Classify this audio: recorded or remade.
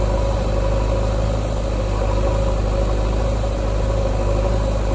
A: recorded